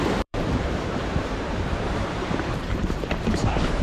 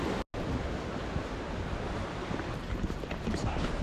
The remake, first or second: first